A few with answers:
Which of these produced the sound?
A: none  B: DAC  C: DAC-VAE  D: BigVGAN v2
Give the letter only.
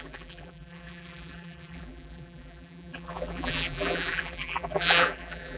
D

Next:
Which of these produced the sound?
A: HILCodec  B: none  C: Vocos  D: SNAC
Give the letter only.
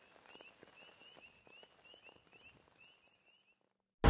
B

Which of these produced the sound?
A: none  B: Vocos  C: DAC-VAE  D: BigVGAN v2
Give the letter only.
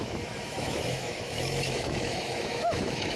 C